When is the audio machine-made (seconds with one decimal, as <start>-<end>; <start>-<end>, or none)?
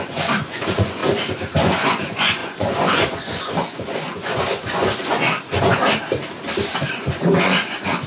0.0-1.0; 1.6-5.8; 6.9-8.1